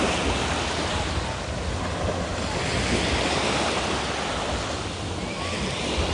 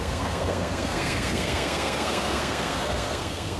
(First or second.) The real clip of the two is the first